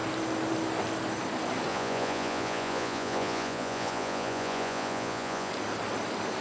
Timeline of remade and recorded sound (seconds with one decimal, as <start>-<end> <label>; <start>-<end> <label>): 0.0-1.7 recorded; 1.7-5.5 remade; 5.5-6.4 recorded